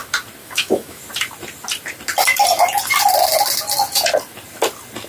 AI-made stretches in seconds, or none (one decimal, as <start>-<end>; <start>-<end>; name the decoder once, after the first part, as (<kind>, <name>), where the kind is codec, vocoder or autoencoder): 0.4-1.0 (autoencoder, DAC-VAE)